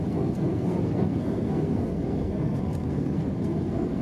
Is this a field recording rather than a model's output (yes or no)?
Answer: no